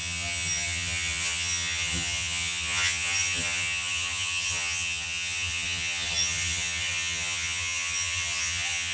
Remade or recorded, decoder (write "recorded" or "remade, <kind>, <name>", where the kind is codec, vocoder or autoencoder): remade, vocoder, HiFi-GAN